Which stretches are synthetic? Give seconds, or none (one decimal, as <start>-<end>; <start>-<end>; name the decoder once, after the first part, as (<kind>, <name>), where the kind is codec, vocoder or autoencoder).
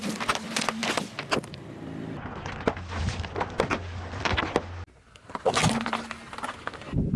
none